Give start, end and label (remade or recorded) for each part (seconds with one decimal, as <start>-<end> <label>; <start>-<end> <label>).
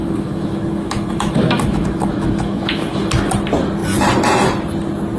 0.0-3.1 remade; 3.1-5.2 recorded